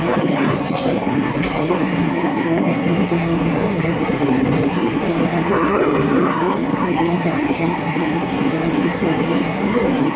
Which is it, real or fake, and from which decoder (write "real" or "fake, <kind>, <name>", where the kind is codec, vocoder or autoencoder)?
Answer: fake, codec, SNAC